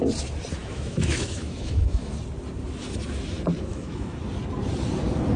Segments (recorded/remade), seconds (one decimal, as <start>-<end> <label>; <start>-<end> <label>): 0.0-0.6 recorded; 0.6-2.1 remade; 2.1-3.7 recorded; 3.7-4.2 remade; 4.2-5.4 recorded